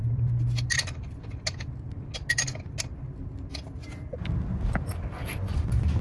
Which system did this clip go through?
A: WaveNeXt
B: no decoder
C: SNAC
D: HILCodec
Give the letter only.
B